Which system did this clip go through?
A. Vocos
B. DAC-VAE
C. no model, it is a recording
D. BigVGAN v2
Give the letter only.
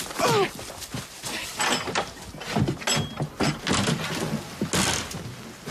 C